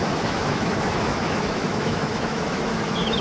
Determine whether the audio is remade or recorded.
remade